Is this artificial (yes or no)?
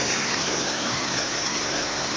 yes